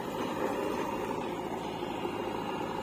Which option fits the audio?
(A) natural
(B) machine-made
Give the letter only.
B